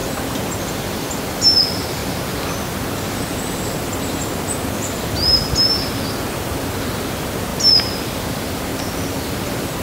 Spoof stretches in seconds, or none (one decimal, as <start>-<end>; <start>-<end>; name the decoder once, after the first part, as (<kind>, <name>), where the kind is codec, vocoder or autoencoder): 0.6-2.0 (vocoder, BigVGAN v2); 6.2-7.5; 8.2-9.8